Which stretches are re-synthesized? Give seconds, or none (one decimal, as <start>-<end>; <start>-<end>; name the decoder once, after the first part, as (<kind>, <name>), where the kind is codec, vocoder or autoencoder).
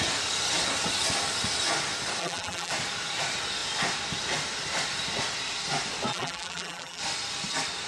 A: 2.2-2.7 (vocoder, BigVGAN v2); 6.1-7.0